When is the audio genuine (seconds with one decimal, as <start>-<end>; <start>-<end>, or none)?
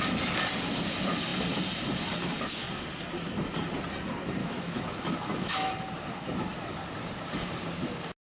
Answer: 0.0-4.4; 5.7-8.3